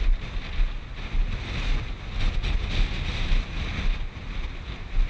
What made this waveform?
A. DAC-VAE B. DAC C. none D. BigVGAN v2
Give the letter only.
C